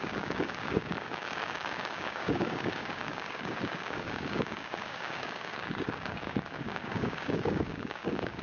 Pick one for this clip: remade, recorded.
remade